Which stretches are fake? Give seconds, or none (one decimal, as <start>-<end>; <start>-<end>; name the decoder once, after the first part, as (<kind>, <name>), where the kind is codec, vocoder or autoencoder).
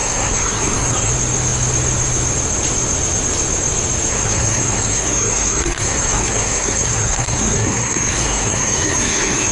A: 0.0-1.1 (codec, SNAC); 4.1-9.5